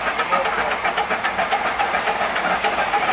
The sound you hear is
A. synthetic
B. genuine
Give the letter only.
B